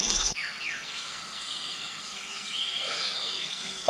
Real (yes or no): no